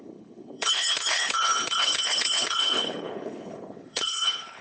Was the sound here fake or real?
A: fake